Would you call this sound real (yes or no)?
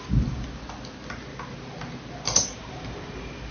yes